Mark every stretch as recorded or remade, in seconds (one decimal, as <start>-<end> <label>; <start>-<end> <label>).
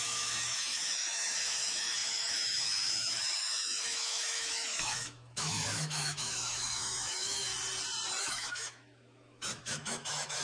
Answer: 0.0-7.5 remade; 7.5-8.2 recorded; 8.2-10.4 remade